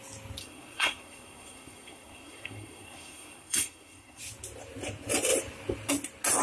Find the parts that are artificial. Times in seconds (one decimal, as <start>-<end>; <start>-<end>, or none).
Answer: 0.4-4.2